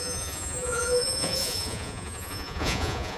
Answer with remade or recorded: remade